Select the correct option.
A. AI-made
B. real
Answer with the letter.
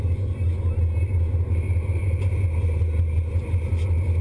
B